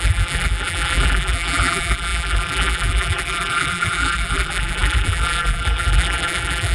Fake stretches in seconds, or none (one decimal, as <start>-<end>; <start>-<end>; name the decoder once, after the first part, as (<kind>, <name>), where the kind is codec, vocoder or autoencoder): 0.0-6.7 (vocoder, BigVGAN v2)